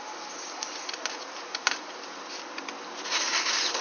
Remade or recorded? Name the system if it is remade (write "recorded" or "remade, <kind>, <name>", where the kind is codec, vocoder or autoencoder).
recorded